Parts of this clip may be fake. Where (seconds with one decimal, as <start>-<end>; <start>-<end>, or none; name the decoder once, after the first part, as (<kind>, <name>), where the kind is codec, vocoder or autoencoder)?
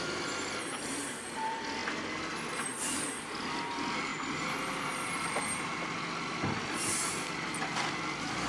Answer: 0.0-1.8 (vocoder, BigVGAN v2); 2.6-4.1; 7.9-8.5